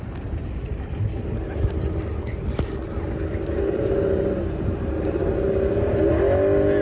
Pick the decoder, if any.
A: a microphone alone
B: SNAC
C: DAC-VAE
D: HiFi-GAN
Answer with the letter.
A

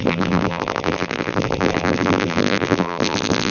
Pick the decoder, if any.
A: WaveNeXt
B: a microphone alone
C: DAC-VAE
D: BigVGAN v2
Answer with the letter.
D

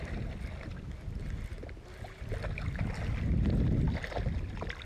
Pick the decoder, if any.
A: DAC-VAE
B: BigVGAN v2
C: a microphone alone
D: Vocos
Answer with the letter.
C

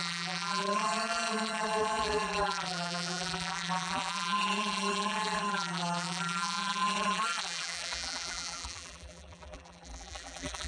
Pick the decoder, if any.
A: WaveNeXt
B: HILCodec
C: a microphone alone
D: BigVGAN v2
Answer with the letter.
D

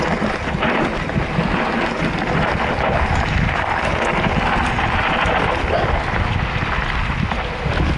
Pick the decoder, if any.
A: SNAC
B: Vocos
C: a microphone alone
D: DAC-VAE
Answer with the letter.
C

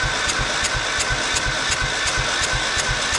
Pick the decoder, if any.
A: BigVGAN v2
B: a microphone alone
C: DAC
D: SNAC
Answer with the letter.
B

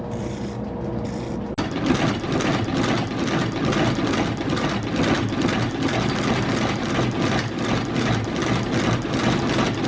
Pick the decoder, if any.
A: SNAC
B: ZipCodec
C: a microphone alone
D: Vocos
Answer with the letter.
C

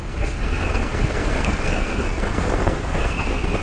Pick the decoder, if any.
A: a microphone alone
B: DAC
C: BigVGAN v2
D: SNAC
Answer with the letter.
D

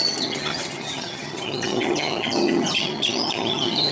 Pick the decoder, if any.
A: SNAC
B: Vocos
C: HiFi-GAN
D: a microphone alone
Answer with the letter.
C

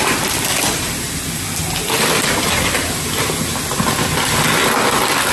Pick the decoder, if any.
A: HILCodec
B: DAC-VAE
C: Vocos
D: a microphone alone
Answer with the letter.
D